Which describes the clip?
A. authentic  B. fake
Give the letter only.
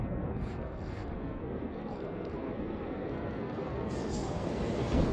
B